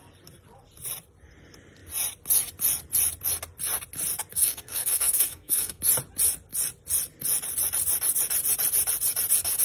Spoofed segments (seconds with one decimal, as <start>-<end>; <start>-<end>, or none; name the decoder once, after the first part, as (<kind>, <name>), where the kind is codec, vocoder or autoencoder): 4.3-5.8 (codec, SNAC)